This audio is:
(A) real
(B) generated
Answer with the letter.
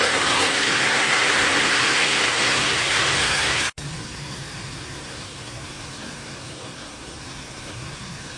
B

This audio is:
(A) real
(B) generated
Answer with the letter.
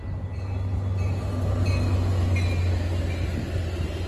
A